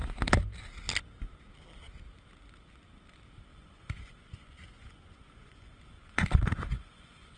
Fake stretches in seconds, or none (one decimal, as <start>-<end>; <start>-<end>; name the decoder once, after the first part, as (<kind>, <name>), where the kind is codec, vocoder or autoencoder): 3.5-7.4 (vocoder, Vocos)